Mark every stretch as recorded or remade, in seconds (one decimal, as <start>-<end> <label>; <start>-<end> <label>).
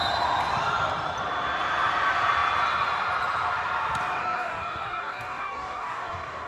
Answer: 0.0-4.2 recorded; 4.2-6.5 remade